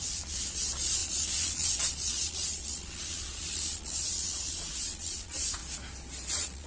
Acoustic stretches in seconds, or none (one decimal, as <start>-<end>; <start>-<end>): 5.6-6.3